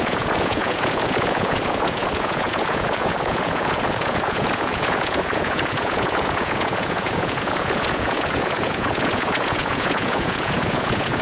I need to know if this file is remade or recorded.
remade